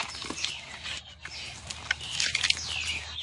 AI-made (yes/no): no